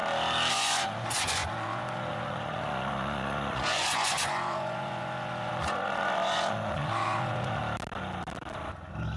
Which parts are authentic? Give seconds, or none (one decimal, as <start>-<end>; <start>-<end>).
0.0-0.5; 7.6-9.2